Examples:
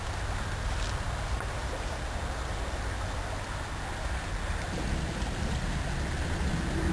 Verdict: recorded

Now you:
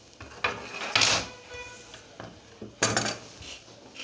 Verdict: recorded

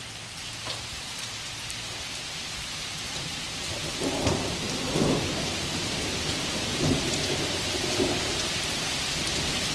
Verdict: remade